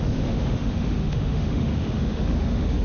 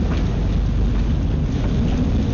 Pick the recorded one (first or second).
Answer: second